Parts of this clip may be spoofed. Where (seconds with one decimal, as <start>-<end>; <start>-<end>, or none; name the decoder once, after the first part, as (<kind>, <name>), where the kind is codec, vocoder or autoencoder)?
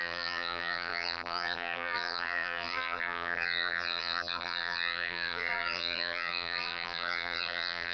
0.0-7.9 (vocoder, BigVGAN v2)